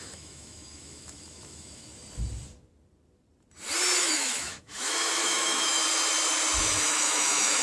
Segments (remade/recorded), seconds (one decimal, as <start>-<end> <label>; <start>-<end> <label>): 0.0-1.9 remade; 1.9-4.0 recorded; 4.0-5.8 remade; 5.8-6.6 recorded; 6.6-7.6 remade